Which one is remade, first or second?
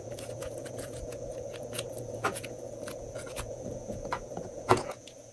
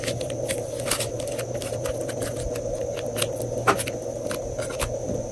first